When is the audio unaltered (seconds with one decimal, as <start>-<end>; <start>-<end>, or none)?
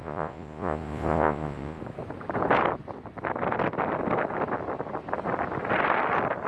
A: 1.8-6.5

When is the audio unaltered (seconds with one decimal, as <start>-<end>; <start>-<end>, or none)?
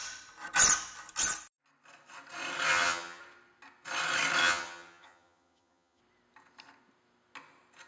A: 0.0-2.7; 3.2-4.4; 6.0-7.9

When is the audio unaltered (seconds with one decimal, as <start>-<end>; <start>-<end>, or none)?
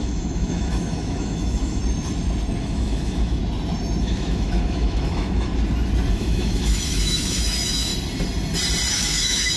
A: 1.8-2.6; 3.4-4.0; 5.5-6.1; 7.9-8.9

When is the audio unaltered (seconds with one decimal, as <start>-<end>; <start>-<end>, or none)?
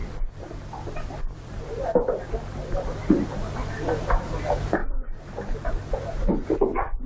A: 4.8-5.4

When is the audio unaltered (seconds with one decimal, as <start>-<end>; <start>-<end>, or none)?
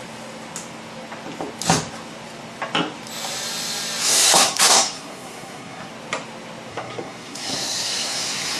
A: 0.0-4.0; 5.9-6.7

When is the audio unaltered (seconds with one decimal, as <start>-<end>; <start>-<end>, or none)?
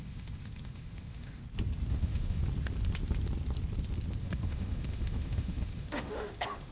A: 1.4-1.9; 2.4-4.2